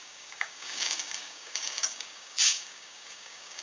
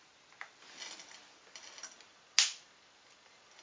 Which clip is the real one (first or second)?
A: second